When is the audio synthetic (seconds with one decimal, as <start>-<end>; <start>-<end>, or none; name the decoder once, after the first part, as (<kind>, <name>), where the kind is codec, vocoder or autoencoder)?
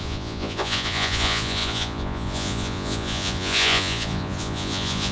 0.0-5.1 (vocoder, Vocos)